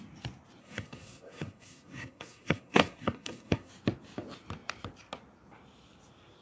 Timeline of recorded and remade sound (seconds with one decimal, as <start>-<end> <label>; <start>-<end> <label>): 0.0-0.6 recorded; 0.6-3.7 remade; 3.7-6.4 recorded